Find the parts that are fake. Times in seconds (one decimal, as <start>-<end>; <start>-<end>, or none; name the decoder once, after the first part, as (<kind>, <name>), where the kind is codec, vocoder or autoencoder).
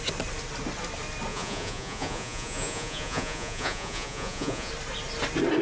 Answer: 1.3-4.7 (vocoder, Vocos)